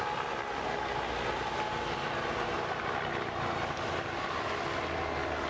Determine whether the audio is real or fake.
real